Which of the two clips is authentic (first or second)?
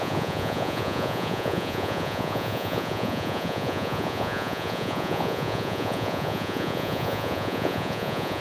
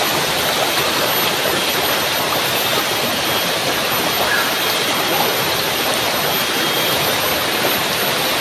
second